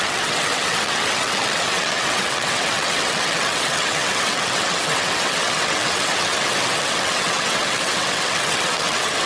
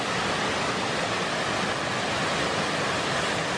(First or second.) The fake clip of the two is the first